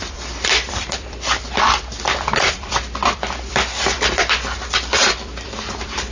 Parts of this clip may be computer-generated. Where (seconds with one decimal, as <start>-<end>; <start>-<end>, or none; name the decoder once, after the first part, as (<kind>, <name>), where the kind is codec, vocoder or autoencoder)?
0.0-6.1 (vocoder, BigVGAN v2)